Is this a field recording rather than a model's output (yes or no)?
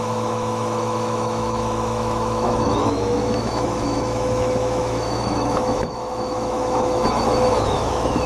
no